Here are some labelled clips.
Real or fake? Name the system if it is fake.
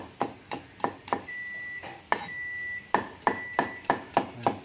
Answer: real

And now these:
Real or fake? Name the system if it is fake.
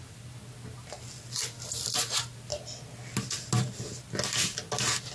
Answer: real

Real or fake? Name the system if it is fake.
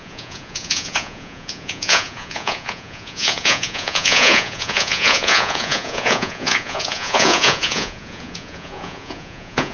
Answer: fake, vocoder, Vocos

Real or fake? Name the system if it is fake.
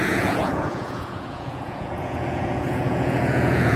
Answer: fake, vocoder, Vocos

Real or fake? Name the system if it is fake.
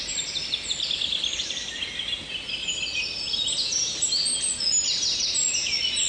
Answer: real